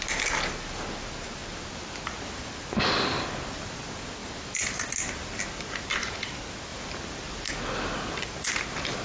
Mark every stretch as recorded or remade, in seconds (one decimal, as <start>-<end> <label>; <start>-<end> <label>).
0.0-9.0 recorded

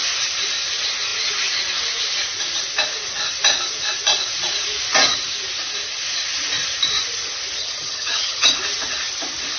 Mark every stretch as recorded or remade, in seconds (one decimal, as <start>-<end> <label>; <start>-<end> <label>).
0.0-7.6 recorded; 7.6-8.5 remade; 8.5-9.6 recorded

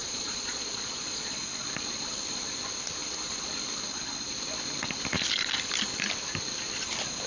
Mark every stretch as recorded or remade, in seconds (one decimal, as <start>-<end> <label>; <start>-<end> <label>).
0.0-1.4 remade; 1.4-7.3 recorded

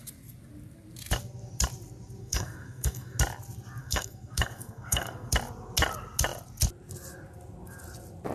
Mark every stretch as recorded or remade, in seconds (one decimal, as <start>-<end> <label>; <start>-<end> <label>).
0.0-2.2 recorded; 2.2-3.2 remade; 3.2-3.8 recorded; 3.8-5.3 remade; 5.3-8.3 recorded

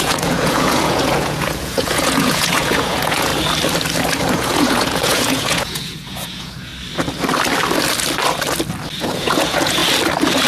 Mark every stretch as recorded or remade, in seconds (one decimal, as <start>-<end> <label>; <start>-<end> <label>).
0.0-3.3 remade; 3.3-4.3 recorded; 4.3-6.7 remade; 6.7-9.0 recorded; 9.0-9.8 remade; 9.8-10.5 recorded

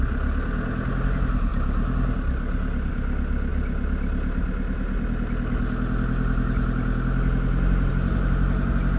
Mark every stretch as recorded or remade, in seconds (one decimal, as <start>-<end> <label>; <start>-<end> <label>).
0.0-9.0 recorded

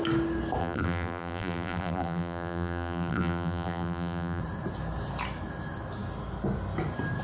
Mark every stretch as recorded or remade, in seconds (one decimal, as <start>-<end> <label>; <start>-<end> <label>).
0.0-0.6 recorded; 0.6-4.4 remade; 4.4-7.2 recorded

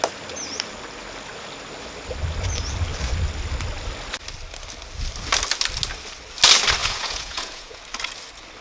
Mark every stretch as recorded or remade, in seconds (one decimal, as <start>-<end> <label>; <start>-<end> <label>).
0.0-6.8 recorded; 6.8-7.8 remade; 7.8-8.6 recorded